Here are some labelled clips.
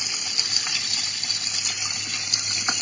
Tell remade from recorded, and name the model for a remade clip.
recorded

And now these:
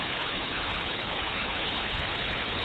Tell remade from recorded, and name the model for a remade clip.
remade, codec, HILCodec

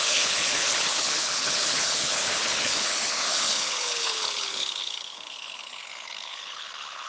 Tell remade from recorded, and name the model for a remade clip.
remade, codec, HILCodec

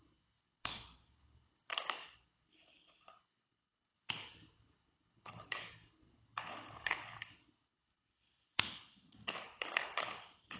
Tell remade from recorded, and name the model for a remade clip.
remade, codec, HILCodec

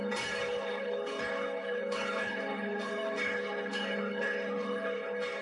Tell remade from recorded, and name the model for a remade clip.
remade, codec, HILCodec